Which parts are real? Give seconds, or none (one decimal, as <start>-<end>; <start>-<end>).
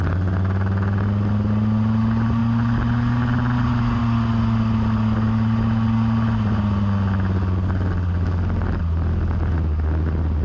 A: 0.0-10.4